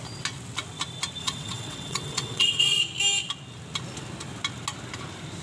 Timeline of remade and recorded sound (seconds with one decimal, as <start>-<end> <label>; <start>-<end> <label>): 0.0-1.2 recorded; 1.2-2.8 remade; 2.8-5.4 recorded